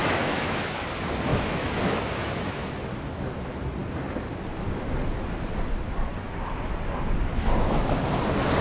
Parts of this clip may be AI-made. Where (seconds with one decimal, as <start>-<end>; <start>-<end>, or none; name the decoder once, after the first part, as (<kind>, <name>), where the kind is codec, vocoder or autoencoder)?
0.0-0.7 (autoencoder, DAC-VAE); 1.3-2.7